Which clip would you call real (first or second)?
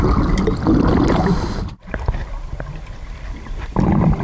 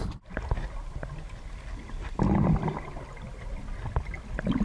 second